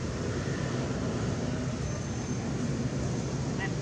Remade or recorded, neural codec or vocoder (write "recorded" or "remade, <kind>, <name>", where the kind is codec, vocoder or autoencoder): recorded